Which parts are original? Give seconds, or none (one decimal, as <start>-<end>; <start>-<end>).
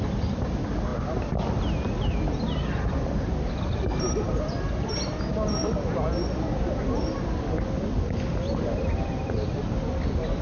0.0-10.4